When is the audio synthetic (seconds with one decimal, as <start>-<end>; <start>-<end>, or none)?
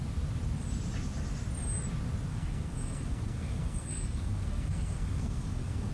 2.3-5.9